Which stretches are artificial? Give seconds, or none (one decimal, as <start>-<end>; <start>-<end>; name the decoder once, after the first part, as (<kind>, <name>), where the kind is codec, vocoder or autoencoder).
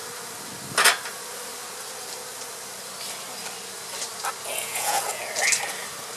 4.5-5.2 (vocoder, Vocos)